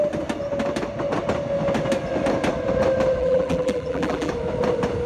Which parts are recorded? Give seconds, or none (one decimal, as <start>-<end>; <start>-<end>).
0.0-3.2; 4.3-5.1